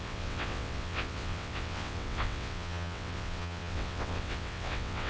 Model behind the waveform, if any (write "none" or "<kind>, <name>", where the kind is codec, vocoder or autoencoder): vocoder, WaveNeXt